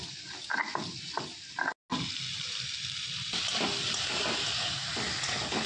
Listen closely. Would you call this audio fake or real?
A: real